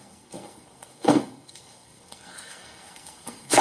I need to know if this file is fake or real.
fake